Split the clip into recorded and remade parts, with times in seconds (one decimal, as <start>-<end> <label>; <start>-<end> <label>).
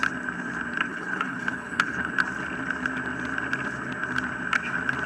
0.0-0.9 recorded; 0.9-2.1 remade; 2.1-5.1 recorded